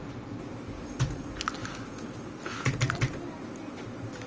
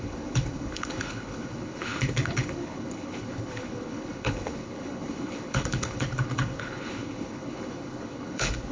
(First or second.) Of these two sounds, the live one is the first